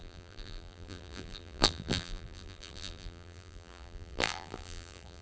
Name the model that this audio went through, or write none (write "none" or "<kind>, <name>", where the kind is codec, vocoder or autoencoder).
vocoder, BigVGAN v2